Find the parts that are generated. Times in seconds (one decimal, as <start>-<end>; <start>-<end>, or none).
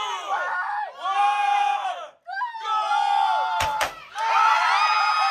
none